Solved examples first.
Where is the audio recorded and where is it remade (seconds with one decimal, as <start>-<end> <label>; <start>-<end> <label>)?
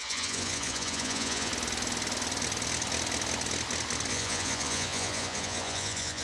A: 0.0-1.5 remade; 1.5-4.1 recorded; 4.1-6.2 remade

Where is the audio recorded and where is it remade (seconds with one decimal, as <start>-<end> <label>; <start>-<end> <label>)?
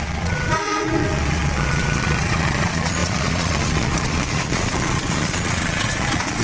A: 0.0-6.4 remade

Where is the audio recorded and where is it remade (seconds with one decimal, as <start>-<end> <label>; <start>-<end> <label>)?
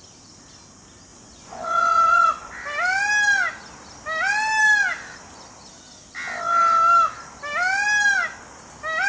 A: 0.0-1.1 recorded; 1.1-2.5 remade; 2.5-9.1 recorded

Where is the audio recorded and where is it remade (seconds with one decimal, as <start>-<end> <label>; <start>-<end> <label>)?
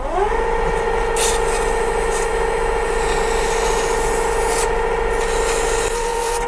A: 0.0-6.5 recorded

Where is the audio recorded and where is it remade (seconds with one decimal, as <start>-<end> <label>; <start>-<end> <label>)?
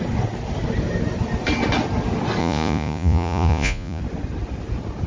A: 0.0-2.4 recorded; 2.4-4.0 remade; 4.0-5.1 recorded